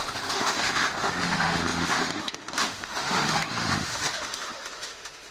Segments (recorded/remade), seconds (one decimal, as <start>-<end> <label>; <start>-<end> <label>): 0.0-5.3 remade